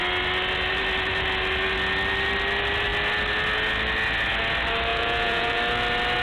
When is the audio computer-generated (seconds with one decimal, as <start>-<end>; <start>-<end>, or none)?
4.9-5.6